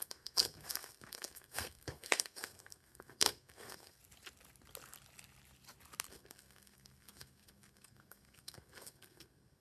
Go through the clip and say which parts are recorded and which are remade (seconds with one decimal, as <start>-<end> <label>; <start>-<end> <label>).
0.0-4.0 remade; 4.0-6.1 recorded; 6.1-9.6 remade